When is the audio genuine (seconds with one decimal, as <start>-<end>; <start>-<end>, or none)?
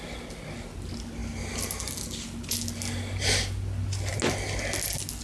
0.0-5.2